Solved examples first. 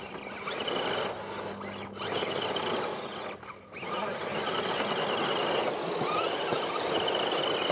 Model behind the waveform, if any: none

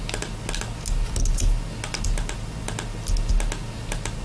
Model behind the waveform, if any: none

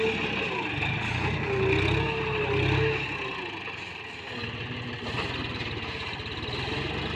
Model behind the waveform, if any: none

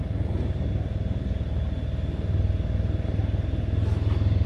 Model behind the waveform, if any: none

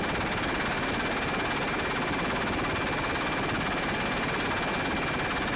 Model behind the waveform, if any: none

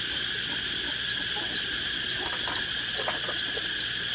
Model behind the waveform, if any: none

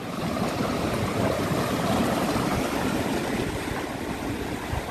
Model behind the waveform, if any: none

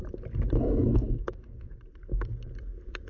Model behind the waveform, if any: none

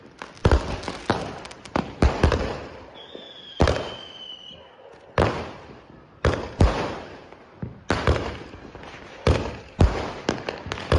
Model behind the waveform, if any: none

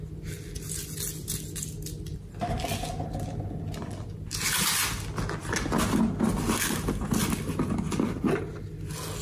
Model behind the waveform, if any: none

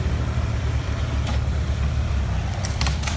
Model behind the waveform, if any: vocoder, BigVGAN v2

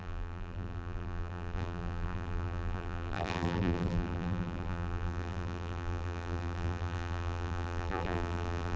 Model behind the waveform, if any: vocoder, BigVGAN v2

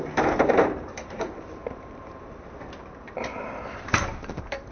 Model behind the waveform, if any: vocoder, BigVGAN v2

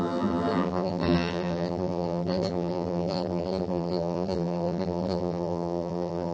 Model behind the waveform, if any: vocoder, BigVGAN v2